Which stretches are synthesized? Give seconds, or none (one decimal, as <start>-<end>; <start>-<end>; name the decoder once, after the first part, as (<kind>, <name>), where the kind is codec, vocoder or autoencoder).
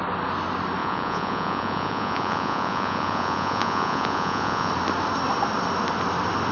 0.8-4.7 (vocoder, Vocos)